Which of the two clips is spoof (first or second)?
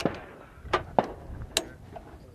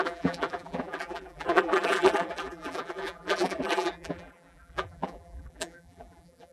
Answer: second